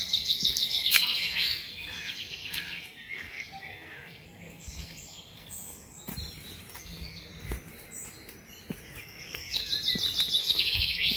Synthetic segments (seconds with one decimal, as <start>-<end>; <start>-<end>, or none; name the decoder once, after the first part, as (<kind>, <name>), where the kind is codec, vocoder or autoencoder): 0.0-6.1 (codec, SNAC); 6.8-7.3; 9.0-9.7; 10.4-11.2